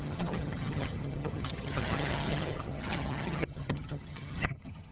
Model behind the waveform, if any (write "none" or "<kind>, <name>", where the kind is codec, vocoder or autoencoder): vocoder, HiFi-GAN